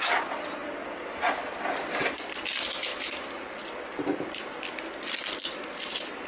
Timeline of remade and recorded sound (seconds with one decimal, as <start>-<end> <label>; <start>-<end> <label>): 0.0-0.6 recorded; 0.6-2.0 remade; 2.0-2.9 recorded; 2.9-5.7 remade; 5.7-6.3 recorded